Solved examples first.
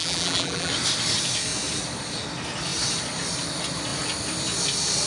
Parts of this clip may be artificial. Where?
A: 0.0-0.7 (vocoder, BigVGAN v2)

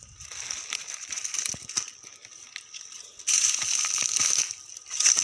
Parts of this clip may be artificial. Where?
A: none